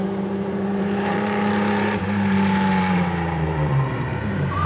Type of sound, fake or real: fake